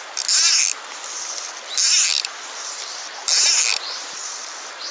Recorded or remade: recorded